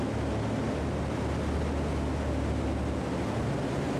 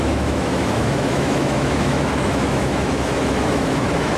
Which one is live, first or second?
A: first